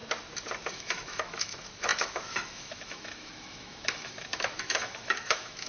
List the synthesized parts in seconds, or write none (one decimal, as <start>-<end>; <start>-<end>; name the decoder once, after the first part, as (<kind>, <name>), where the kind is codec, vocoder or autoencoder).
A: 0.7-5.7 (autoencoder, DAC-VAE)